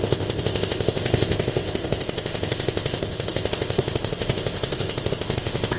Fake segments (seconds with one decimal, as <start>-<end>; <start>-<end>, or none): 0.0-5.8